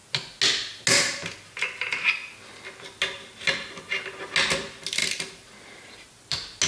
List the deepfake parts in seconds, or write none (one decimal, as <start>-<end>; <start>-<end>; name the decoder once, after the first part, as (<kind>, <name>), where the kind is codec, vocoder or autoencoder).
none